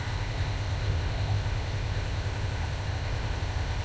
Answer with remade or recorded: remade